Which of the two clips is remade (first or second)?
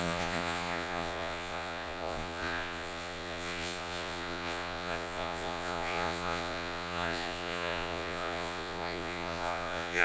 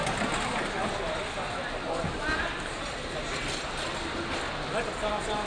first